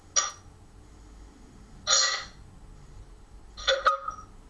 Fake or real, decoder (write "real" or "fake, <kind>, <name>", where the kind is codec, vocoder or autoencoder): real